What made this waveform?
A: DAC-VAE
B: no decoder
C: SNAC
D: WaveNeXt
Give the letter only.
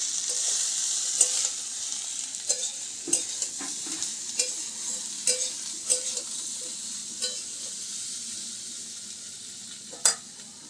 B